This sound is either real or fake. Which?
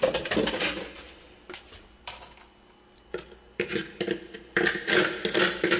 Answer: real